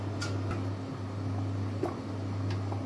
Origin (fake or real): real